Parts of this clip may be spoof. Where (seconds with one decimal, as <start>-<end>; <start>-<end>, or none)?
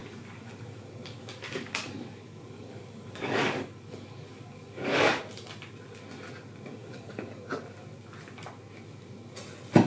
0.0-5.2; 6.8-7.4